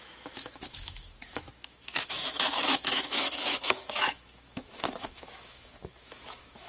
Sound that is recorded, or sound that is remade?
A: remade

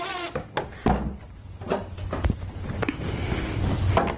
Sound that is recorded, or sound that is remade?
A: recorded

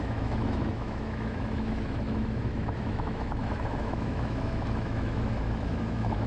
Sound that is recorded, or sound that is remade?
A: remade